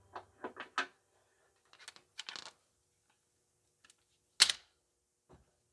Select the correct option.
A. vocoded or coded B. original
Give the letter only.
B